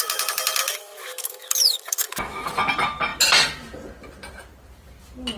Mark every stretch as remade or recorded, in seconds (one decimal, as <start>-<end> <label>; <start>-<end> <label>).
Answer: 0.0-0.6 recorded; 0.6-2.5 remade; 2.5-5.4 recorded